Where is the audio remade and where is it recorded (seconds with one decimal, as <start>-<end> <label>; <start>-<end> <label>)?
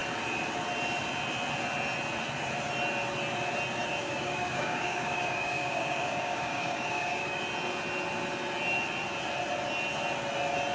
0.0-4.0 recorded; 4.0-7.4 remade; 7.4-10.7 recorded